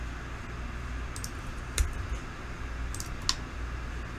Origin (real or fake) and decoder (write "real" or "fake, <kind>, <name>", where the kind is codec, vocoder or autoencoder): real